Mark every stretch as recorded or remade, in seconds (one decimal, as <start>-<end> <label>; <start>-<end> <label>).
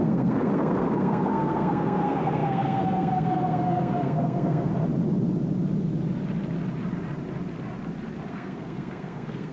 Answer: 0.0-4.7 remade; 4.7-8.3 recorded; 8.3-9.5 remade